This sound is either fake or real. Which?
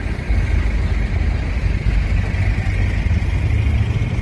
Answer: real